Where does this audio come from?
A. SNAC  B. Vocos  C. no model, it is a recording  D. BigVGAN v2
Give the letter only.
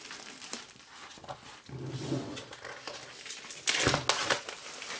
C